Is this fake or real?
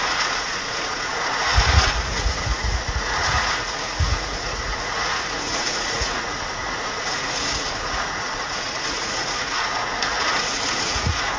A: fake